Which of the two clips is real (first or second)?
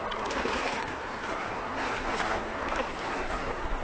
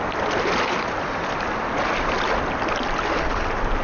second